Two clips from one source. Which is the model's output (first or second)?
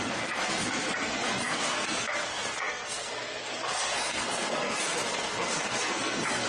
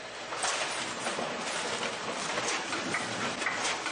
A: first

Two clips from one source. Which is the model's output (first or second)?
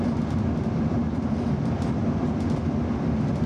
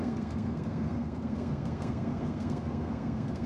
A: second